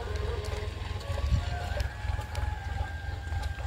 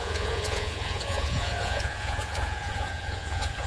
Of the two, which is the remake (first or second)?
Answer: second